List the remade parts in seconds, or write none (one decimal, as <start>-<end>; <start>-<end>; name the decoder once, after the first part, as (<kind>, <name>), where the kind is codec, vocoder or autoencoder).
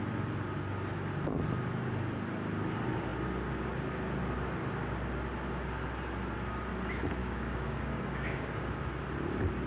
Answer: 7.2-8.7 (codec, DAC)